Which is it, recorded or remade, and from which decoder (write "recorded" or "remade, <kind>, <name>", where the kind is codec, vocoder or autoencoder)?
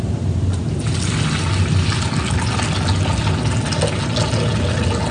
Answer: recorded